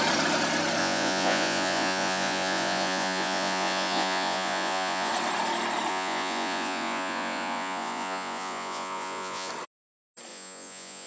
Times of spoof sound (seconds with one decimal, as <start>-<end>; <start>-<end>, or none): 0.8-5.1; 5.9-9.5; 10.3-11.1